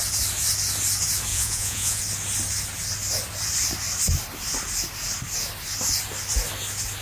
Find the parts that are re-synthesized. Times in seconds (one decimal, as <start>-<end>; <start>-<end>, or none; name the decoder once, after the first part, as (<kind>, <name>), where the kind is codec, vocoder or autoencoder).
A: 1.3-2.0 (vocoder, Vocos)